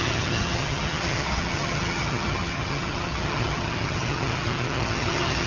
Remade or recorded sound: remade